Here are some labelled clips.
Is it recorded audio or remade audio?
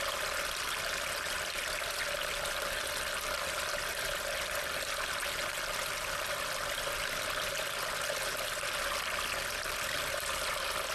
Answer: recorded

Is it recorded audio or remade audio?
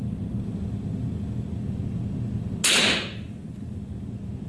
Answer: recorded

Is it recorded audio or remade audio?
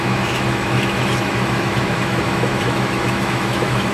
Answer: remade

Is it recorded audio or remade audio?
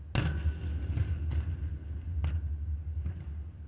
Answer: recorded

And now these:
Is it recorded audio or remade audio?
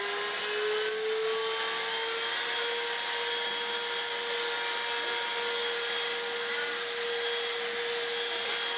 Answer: recorded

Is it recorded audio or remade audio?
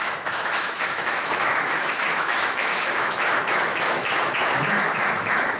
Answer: remade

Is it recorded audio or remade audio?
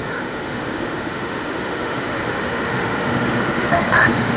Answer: remade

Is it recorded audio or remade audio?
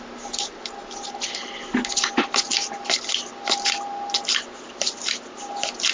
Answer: recorded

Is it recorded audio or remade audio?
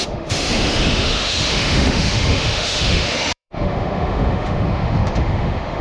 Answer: remade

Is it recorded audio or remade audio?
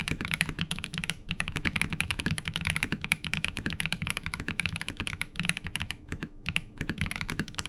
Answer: remade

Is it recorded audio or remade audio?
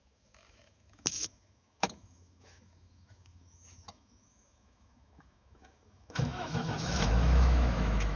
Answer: remade